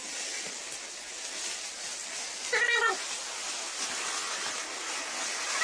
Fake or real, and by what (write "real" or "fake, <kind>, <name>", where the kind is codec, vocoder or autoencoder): real